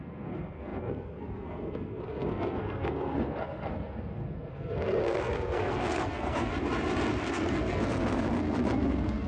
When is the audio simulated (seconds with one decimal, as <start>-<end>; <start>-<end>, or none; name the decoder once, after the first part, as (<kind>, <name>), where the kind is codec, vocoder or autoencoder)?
0.0-6.5 (codec, SNAC); 7.3-9.3